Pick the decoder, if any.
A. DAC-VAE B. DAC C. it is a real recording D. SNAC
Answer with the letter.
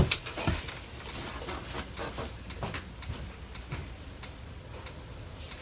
C